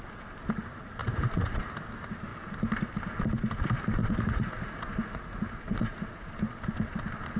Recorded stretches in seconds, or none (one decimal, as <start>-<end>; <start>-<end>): 0.0-1.0; 1.7-4.0; 6.3-7.4